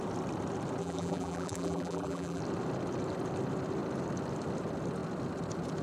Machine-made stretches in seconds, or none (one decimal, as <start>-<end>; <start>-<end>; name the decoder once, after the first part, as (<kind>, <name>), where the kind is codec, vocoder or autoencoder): 0.8-2.4 (vocoder, BigVGAN v2)